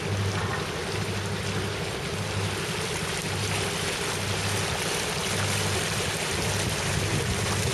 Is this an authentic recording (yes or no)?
yes